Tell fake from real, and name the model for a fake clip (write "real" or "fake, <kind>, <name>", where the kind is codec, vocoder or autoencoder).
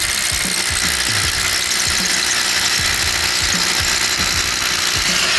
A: real